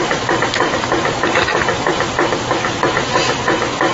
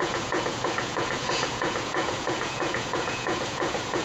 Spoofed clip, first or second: second